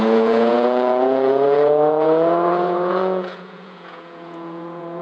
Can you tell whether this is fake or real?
fake